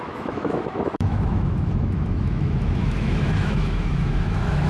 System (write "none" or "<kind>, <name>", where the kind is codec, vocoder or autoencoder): autoencoder, DAC-VAE